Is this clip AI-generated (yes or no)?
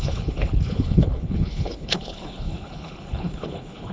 yes